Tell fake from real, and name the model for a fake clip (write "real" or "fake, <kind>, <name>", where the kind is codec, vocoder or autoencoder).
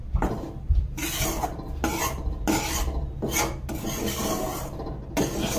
real